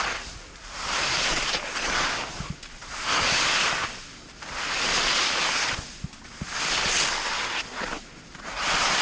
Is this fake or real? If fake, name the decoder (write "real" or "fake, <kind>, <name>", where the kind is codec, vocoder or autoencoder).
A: real